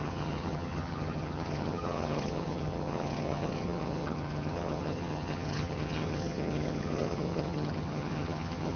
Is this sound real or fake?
fake